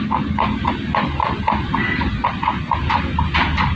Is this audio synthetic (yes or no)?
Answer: no